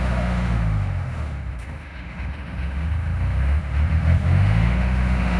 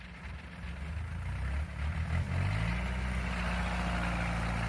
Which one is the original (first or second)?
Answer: second